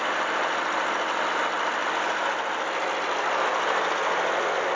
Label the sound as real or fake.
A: real